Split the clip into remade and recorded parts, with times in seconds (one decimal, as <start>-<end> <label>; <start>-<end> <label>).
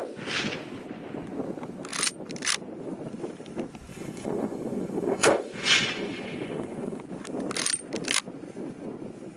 0.0-3.9 recorded; 3.9-7.0 remade; 7.0-9.4 recorded